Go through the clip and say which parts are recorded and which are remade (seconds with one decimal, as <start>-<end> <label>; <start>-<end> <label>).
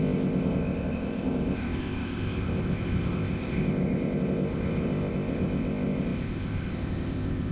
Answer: 0.0-7.5 remade